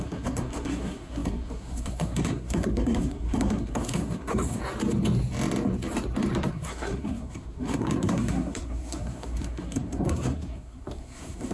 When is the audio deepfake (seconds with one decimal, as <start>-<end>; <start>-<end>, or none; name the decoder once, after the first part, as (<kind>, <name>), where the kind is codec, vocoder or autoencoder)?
0.0-4.6 (codec, SNAC); 6.5-11.5